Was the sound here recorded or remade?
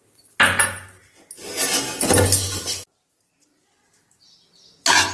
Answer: recorded